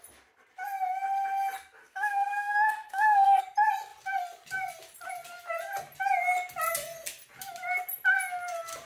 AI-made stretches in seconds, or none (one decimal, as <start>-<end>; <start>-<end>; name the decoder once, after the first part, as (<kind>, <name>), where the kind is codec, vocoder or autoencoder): 1.8-3.4 (codec, SNAC)